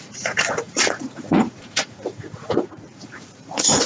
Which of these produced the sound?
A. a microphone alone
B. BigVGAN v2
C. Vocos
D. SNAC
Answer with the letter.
C